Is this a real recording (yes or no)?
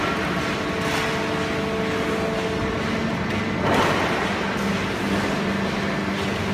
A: yes